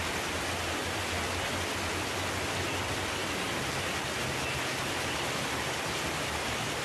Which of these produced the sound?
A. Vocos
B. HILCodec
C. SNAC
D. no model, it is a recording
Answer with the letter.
D